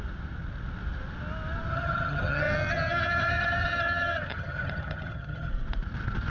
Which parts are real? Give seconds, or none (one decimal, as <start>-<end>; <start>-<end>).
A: 0.0-1.7; 5.5-6.3